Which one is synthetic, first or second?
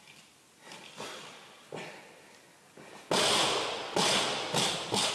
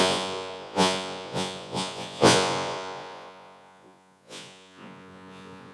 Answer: second